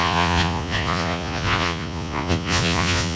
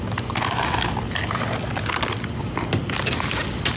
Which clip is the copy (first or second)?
first